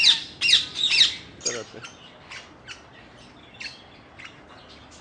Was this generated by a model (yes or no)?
no